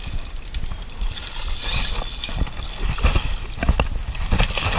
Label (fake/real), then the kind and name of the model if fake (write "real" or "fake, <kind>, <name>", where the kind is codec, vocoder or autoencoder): real